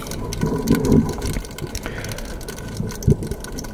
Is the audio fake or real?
real